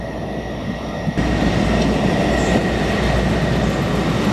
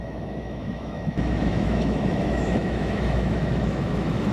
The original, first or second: first